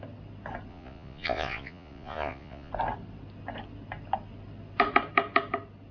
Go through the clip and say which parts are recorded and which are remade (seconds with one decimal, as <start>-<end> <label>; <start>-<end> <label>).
0.0-0.7 recorded; 0.7-2.7 remade; 2.7-5.9 recorded